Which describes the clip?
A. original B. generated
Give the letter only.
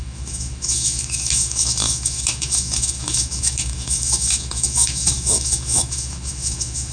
B